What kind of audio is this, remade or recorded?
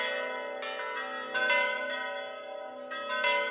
recorded